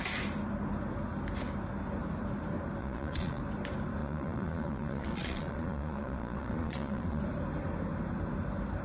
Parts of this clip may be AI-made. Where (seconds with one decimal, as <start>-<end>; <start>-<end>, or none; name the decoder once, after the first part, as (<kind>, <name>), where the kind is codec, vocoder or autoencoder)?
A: 2.8-3.4 (vocoder, Vocos); 4.0-7.2